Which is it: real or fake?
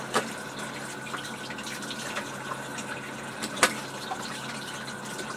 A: real